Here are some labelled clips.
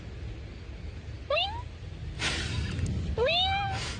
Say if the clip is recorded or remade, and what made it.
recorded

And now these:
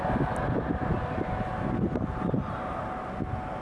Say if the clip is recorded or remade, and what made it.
recorded